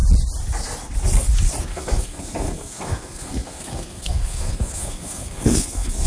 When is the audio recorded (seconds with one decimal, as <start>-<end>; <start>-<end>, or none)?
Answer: 0.0-1.6